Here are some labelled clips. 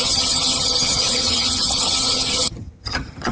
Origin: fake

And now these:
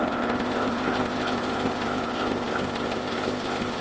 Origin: fake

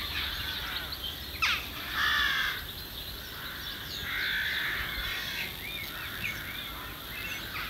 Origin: real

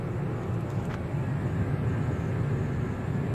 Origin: real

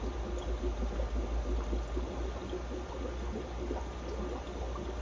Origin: real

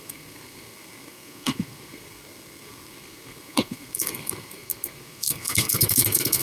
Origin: fake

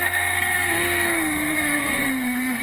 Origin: fake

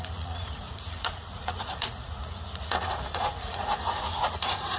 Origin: fake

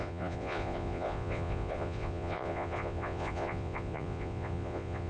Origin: fake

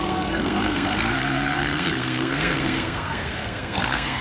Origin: fake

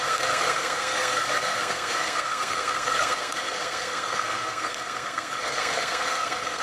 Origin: fake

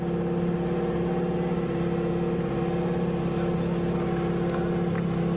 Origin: real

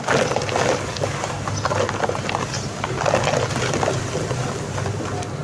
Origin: real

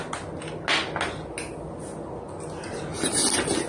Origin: real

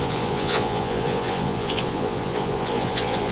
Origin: fake